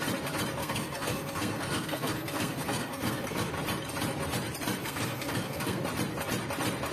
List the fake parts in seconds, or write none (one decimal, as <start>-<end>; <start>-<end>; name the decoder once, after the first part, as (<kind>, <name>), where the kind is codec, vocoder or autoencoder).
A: 0.6-3.5 (codec, SNAC); 4.8-5.8